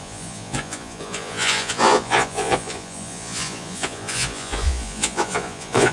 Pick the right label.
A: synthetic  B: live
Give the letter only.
A